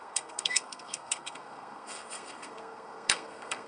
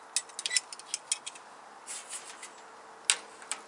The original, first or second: second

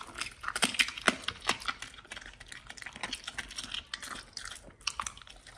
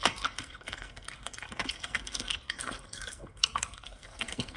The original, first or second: first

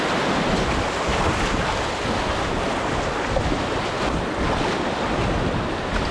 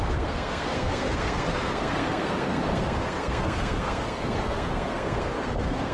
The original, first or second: first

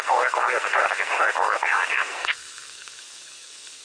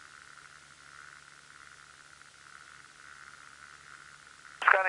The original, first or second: second